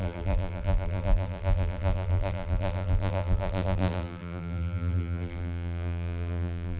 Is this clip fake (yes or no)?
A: yes